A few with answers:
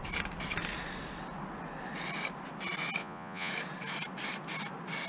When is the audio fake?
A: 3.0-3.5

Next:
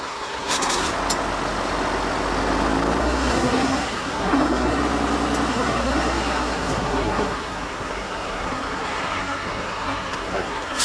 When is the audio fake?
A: 0.0-0.9; 3.0-4.8; 5.5-10.8

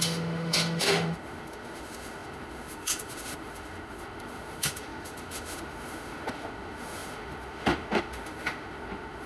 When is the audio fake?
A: 0.0-9.3

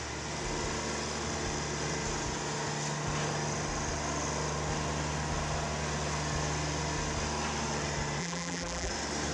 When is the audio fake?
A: 8.2-8.9